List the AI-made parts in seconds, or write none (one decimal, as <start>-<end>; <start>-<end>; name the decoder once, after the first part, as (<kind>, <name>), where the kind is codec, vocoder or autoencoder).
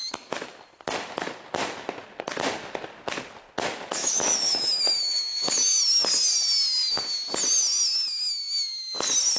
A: 4.0-5.4 (autoencoder, DAC-VAE)